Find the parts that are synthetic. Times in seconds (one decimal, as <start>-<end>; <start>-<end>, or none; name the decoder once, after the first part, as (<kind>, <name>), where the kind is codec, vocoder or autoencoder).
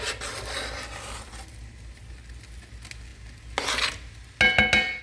none